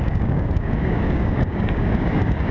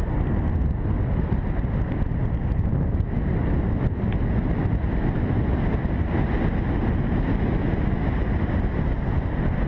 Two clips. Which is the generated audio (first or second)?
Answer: first